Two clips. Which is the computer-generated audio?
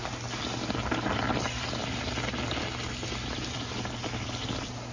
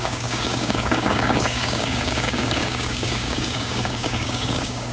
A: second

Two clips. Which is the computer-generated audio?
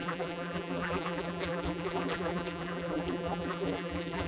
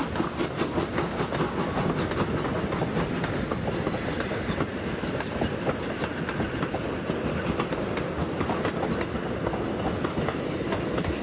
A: first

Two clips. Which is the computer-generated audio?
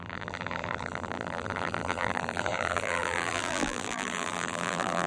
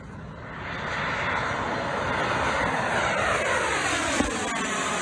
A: first